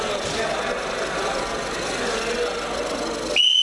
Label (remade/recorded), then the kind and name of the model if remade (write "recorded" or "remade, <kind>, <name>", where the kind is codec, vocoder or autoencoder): recorded